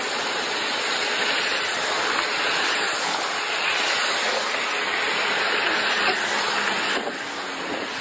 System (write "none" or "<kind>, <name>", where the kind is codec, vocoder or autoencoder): none